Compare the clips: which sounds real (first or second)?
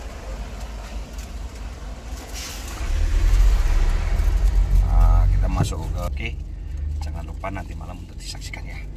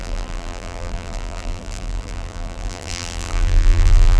first